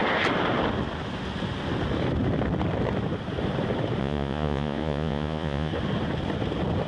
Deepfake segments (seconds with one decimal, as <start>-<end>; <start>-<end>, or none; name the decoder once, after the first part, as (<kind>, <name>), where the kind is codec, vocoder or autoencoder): 4.0-5.7 (vocoder, Vocos)